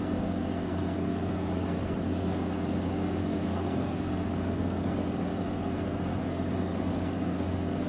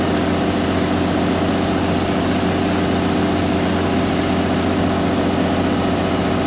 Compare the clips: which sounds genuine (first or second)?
second